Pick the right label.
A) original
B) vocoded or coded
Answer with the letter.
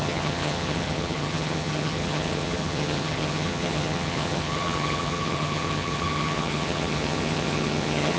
B